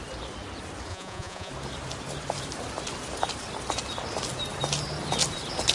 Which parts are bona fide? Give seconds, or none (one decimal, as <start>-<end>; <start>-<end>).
0.0-0.9; 1.5-5.7